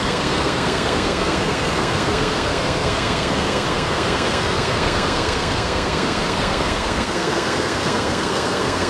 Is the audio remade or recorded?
remade